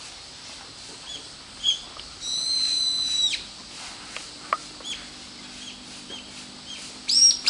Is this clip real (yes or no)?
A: yes